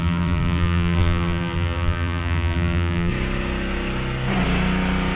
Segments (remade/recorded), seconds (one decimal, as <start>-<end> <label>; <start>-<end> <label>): 0.0-3.1 remade; 3.1-5.1 recorded